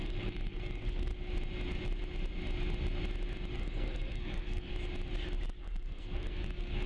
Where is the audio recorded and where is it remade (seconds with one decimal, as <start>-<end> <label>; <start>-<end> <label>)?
0.0-1.1 remade; 1.1-3.5 recorded; 3.5-4.7 remade; 4.7-5.6 recorded; 5.6-6.9 remade